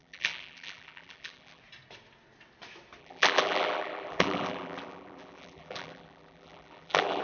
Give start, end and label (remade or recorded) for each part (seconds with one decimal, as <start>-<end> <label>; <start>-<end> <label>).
0.0-1.6 remade; 1.6-3.0 recorded; 3.0-7.2 remade